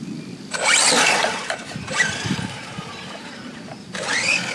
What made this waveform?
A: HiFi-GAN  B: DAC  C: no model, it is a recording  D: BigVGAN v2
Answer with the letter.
C